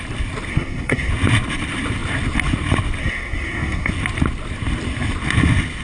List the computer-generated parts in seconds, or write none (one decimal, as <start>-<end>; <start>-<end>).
0.5-1.1; 3.0-3.9